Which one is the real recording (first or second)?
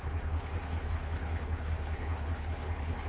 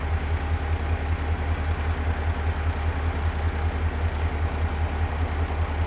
second